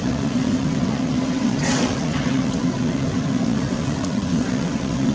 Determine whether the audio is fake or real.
fake